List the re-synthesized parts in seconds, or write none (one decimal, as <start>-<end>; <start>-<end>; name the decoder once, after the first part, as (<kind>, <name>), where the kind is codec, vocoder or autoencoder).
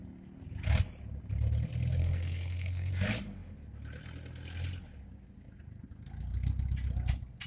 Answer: 2.0-2.9 (codec, SNAC)